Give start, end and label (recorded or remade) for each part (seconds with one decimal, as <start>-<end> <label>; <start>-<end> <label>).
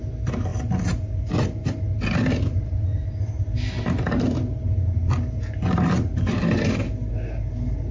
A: 0.0-7.9 recorded